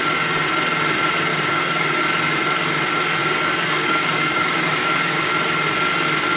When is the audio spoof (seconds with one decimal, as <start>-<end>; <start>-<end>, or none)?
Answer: 1.3-2.0; 3.2-5.2